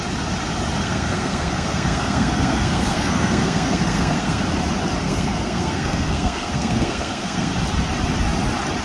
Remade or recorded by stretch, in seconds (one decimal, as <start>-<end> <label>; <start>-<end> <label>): 0.0-0.8 recorded; 0.8-4.4 remade; 4.4-5.0 recorded; 5.0-7.5 remade; 7.5-8.8 recorded